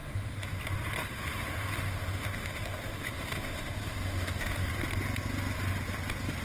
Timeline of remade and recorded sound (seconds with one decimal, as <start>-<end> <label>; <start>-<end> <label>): 0.0-0.6 remade; 0.6-1.0 recorded; 1.0-4.7 remade; 4.7-6.4 recorded